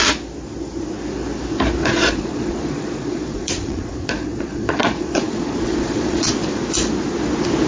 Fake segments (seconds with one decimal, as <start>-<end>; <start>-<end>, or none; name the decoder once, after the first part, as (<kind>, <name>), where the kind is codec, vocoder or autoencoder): 1.8-6.3 (vocoder, Vocos)